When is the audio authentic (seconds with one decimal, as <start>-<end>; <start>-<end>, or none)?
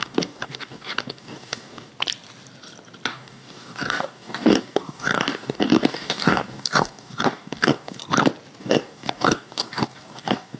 1.9-3.1; 8.0-8.6